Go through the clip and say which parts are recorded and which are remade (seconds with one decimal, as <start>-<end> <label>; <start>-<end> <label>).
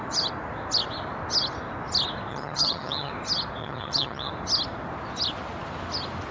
0.0-2.3 recorded; 2.3-3.1 remade; 3.1-3.6 recorded; 3.6-4.3 remade; 4.3-6.3 recorded